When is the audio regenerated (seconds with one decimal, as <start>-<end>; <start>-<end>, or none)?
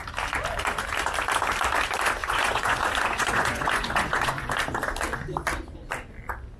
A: 2.2-4.5